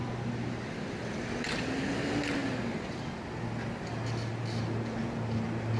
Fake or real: real